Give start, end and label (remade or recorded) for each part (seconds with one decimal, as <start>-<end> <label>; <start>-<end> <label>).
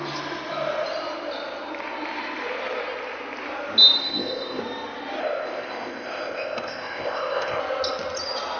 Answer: 0.0-4.0 recorded; 4.0-4.6 remade; 4.6-5.2 recorded; 5.2-7.6 remade; 7.6-8.6 recorded